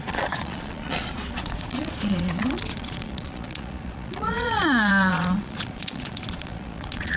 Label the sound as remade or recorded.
remade